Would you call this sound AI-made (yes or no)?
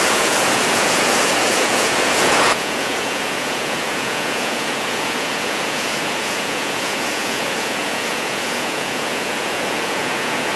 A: yes